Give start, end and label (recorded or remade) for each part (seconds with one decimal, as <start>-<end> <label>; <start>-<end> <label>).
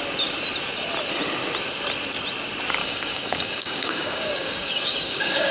0.0-2.8 recorded; 2.8-5.5 remade